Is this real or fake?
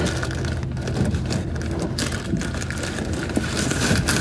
real